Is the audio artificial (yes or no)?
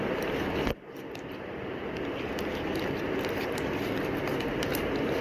no